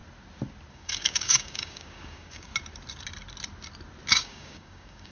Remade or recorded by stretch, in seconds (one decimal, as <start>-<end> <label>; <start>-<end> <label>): 0.0-0.7 recorded; 0.7-2.5 remade; 2.5-4.1 recorded; 4.1-5.1 remade